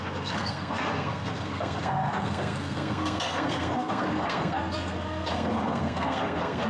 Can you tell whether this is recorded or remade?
remade